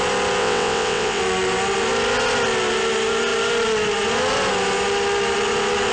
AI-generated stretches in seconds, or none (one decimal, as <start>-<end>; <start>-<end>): 0.4-1.2